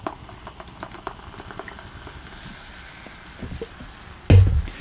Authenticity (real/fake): real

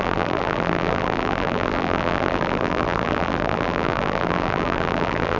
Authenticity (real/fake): fake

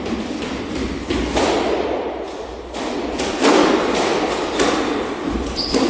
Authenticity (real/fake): real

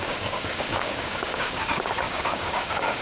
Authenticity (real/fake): fake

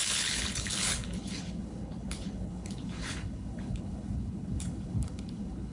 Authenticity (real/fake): fake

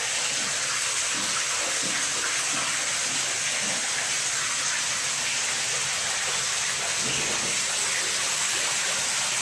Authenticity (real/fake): real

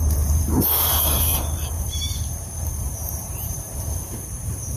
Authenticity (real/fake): fake